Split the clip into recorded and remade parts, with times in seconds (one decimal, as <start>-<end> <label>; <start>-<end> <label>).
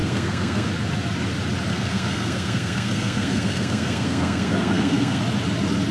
0.0-0.7 remade; 0.7-1.7 recorded; 1.7-5.2 remade; 5.2-5.9 recorded